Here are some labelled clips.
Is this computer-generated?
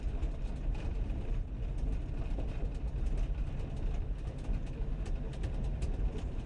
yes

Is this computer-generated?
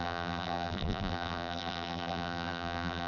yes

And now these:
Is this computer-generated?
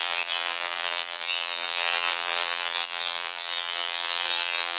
yes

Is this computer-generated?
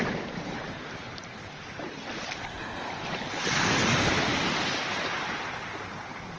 yes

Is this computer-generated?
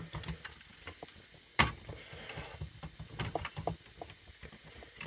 no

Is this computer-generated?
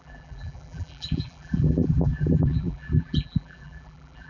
yes